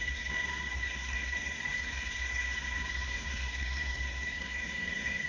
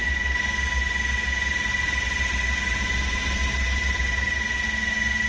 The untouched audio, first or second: second